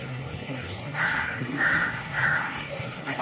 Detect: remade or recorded remade